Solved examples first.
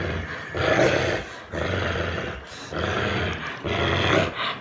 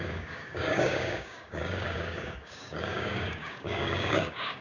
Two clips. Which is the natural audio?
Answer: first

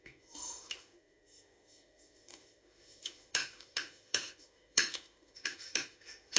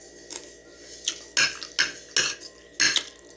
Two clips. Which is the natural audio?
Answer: second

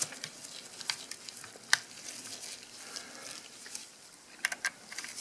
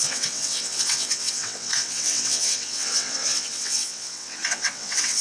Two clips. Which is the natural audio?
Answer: first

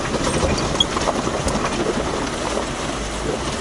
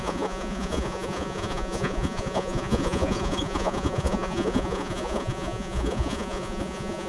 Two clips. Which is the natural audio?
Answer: first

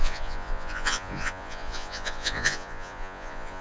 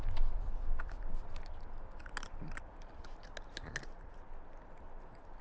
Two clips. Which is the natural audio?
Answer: second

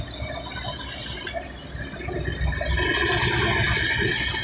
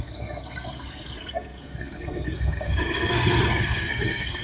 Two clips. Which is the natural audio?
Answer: first